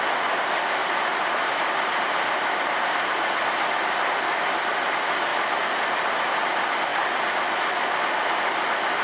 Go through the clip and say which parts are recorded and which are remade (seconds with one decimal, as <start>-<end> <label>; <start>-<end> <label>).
0.0-0.8 recorded; 0.8-3.1 remade; 3.1-9.0 recorded